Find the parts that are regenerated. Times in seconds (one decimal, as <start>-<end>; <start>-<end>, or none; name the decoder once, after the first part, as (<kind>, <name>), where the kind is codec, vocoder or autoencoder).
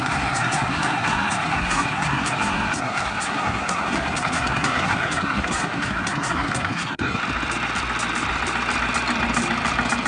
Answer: 0.0-7.2 (codec, SNAC)